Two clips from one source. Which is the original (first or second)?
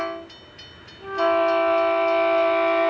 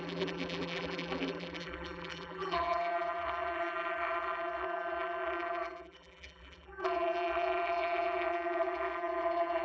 first